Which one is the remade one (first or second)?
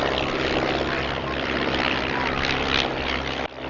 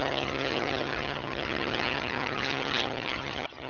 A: second